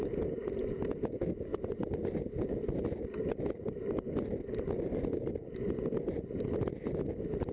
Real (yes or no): yes